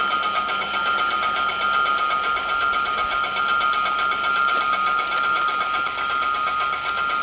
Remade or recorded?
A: recorded